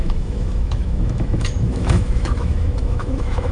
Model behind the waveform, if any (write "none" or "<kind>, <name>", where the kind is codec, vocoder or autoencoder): autoencoder, DAC-VAE